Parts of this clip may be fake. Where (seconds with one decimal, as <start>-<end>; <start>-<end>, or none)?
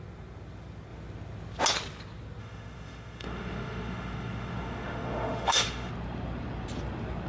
2.4-5.9